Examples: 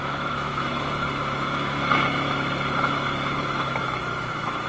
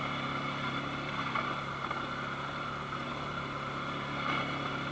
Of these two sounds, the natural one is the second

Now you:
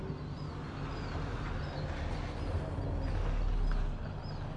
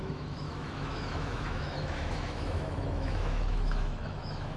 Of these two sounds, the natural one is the first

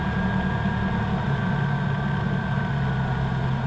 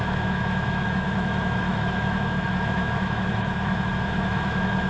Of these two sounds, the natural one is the first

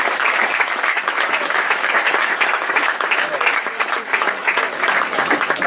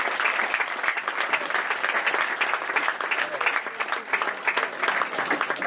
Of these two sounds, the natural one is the second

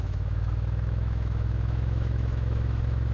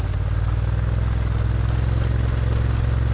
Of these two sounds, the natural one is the second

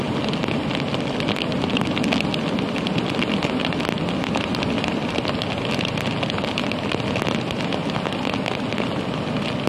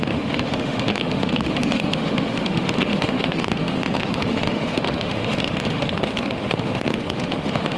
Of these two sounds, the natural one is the first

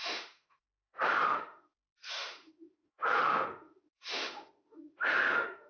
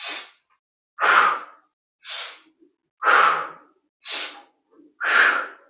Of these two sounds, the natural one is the second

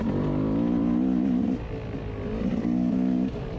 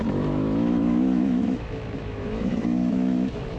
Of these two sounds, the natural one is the first